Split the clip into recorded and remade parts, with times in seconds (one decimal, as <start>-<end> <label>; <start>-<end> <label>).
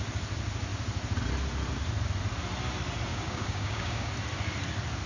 0.0-3.1 recorded; 3.1-4.1 remade; 4.1-5.1 recorded